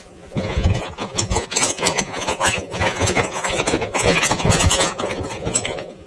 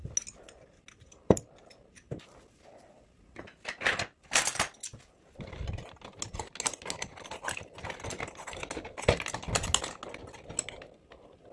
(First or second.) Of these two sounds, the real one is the second